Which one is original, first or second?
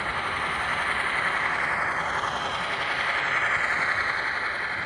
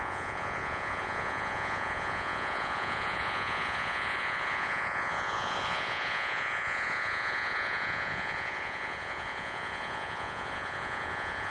first